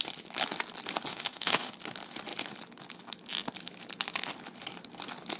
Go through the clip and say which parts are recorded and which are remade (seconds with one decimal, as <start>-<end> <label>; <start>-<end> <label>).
0.0-1.1 recorded; 1.1-1.7 remade; 1.7-5.4 recorded